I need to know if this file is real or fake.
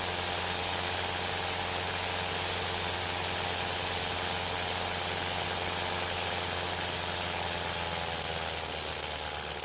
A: real